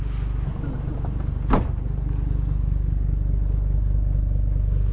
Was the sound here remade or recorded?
recorded